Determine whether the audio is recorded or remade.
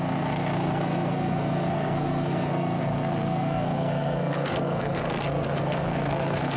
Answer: remade